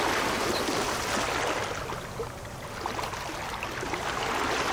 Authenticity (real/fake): real